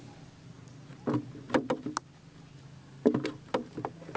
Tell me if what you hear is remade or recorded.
recorded